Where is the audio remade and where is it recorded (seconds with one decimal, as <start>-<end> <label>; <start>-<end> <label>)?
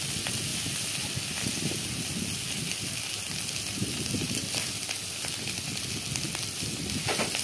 0.0-7.4 recorded